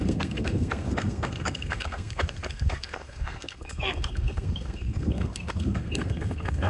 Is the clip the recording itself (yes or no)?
no